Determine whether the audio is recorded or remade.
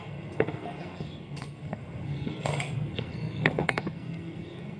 remade